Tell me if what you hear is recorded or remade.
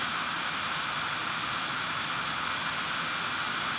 recorded